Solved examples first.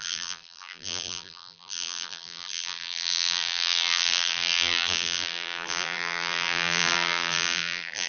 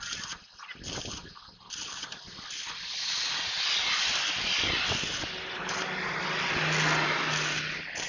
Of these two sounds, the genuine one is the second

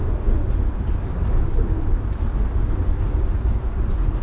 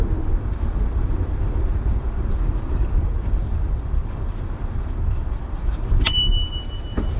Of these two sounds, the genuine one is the first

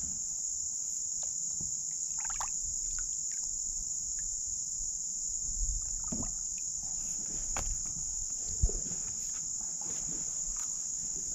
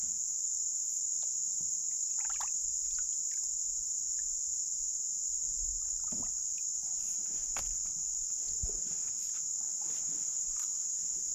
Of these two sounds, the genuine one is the second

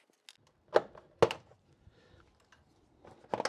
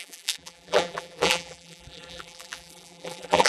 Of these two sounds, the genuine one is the first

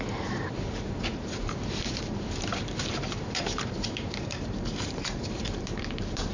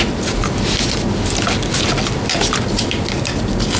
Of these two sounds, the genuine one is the second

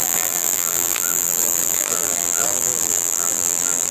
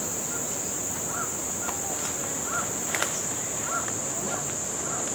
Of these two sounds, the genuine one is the second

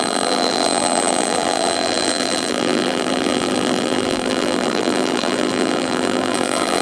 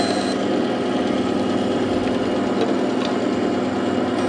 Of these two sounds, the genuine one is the second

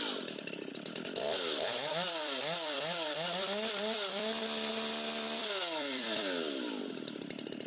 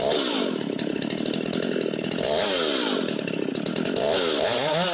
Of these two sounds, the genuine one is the second